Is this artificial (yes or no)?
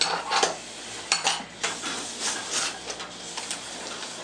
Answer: yes